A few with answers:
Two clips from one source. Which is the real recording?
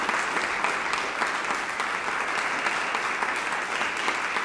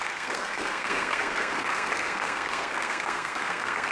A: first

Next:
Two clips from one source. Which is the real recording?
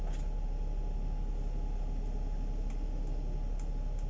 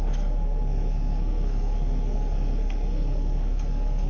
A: first